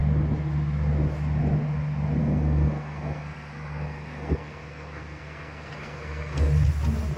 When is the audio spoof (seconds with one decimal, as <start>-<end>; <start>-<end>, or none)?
2.2-6.5